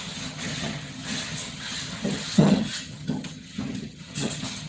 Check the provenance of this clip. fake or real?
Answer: fake